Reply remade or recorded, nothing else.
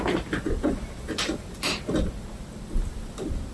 recorded